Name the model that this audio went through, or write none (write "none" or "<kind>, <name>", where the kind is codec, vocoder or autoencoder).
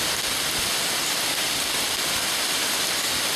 none